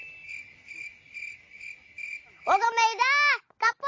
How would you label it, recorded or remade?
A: recorded